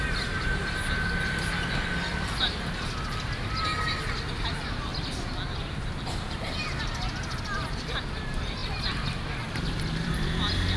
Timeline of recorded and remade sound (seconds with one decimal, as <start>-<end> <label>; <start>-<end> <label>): 0.0-8.6 recorded; 8.6-9.8 remade; 9.8-10.8 recorded